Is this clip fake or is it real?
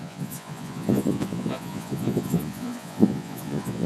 fake